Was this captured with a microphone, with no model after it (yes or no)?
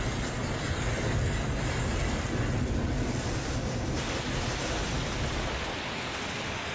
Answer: yes